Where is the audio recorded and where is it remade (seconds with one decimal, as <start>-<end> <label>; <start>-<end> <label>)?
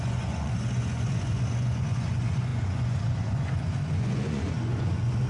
0.0-5.3 remade